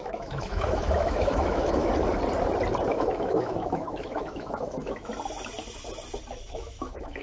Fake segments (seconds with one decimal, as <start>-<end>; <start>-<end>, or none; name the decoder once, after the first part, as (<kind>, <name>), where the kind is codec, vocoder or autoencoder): 0.0-1.9 (autoencoder, DAC-VAE); 2.9-5.1; 6.3-7.2